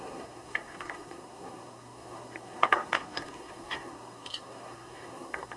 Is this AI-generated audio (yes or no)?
yes